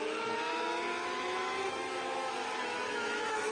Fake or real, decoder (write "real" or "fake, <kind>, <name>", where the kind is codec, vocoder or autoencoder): fake, autoencoder, DAC-VAE